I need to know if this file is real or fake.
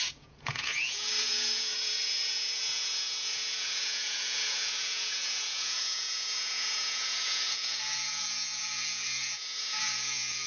fake